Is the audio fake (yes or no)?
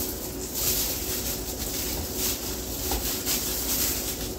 no